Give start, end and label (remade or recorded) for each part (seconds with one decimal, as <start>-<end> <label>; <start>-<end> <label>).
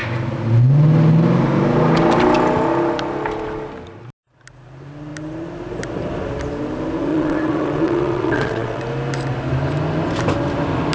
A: 0.0-7.1 recorded; 7.1-8.8 remade; 8.8-10.9 recorded